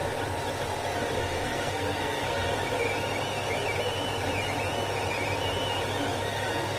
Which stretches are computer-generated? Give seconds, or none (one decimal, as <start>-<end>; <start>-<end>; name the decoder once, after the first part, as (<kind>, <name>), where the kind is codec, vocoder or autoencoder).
1.2-2.5 (codec, SNAC); 6.2-6.8